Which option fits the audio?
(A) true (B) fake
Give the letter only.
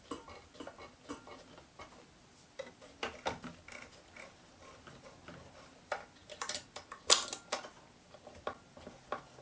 A